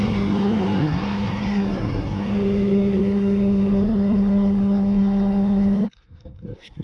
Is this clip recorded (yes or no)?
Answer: no